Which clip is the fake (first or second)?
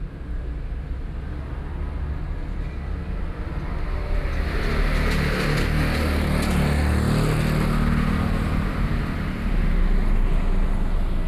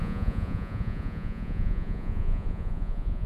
second